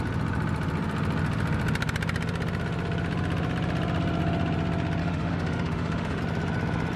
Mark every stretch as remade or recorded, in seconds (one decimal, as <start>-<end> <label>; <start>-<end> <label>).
0.0-5.0 recorded; 5.0-6.2 remade; 6.2-7.0 recorded